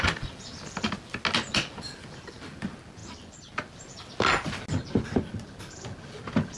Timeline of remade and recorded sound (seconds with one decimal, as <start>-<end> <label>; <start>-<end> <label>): 0.0-6.6 recorded